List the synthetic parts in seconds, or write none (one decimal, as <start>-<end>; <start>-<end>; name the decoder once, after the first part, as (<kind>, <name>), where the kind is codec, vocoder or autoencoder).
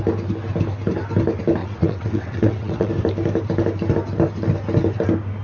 1.6-2.9 (vocoder, WaveNeXt)